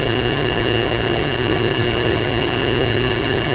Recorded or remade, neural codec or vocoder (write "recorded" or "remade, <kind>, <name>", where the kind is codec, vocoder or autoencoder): remade, vocoder, HiFi-GAN